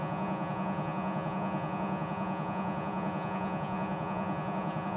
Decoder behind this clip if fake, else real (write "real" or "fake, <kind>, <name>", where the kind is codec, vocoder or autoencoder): fake, vocoder, Vocos